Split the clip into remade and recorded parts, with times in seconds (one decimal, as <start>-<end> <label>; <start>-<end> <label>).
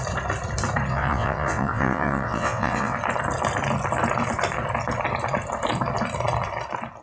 0.0-0.9 recorded; 0.9-3.0 remade; 3.0-7.0 recorded